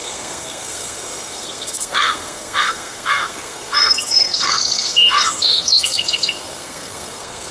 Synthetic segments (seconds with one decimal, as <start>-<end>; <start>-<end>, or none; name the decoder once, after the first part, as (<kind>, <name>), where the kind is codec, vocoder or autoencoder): 0.0-7.5 (codec, SNAC)